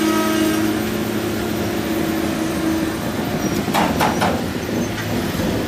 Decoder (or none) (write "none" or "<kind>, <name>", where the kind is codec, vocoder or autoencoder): none